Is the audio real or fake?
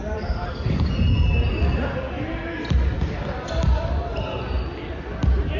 real